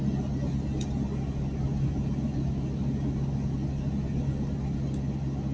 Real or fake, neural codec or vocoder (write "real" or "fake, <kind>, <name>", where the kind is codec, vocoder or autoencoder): real